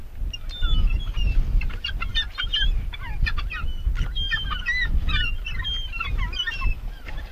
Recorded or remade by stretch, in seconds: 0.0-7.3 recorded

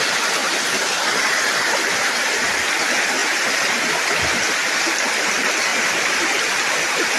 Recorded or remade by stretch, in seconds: 0.0-0.4 recorded; 0.4-2.5 remade; 2.5-3.2 recorded; 3.2-5.2 remade; 5.2-5.7 recorded; 5.7-6.4 remade; 6.4-7.2 recorded